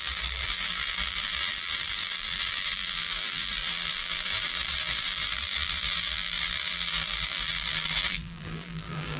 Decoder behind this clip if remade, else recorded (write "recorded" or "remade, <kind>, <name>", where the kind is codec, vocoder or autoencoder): remade, vocoder, BigVGAN v2